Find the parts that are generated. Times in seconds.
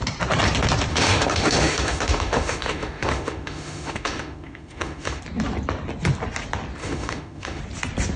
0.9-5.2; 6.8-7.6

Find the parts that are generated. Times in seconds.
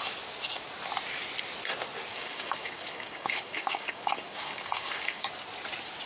2.1-5.3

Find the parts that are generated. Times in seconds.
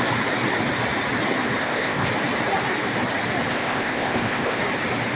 1.6-2.1; 3.5-4.6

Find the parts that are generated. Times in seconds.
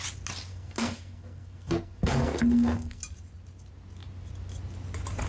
0.5-3.0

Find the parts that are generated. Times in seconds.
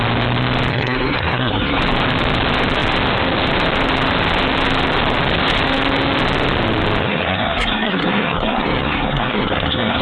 0.7-1.8; 7.0-10.0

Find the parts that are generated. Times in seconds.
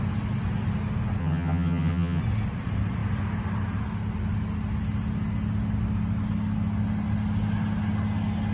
1.2-2.2